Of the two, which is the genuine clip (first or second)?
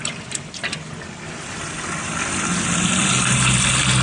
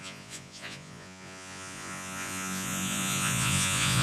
first